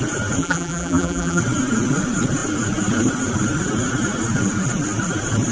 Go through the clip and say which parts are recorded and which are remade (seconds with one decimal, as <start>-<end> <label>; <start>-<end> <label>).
0.0-0.4 recorded; 0.4-1.4 remade; 1.4-5.5 recorded